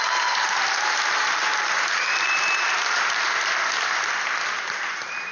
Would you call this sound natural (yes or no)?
yes